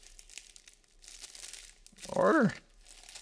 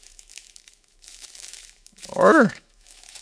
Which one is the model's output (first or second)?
second